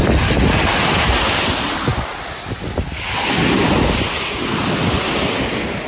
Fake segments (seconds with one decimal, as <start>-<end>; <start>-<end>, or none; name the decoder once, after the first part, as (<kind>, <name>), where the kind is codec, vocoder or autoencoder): none